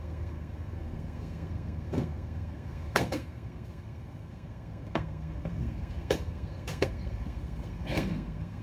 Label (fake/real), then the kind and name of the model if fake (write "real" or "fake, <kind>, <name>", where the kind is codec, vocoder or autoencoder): fake, codec, SNAC